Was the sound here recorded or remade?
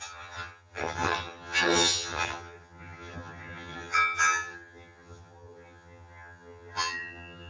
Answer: remade